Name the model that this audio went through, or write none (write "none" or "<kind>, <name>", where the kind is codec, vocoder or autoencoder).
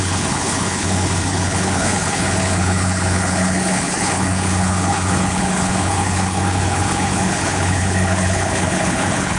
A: codec, HILCodec